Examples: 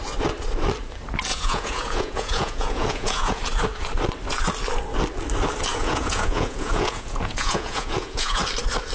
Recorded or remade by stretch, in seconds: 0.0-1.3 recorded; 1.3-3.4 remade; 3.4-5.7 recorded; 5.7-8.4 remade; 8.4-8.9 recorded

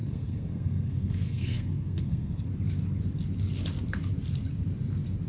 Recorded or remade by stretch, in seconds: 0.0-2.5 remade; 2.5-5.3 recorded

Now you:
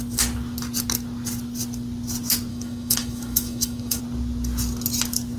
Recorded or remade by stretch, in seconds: 0.0-2.5 recorded; 2.5-4.0 remade; 4.0-5.4 recorded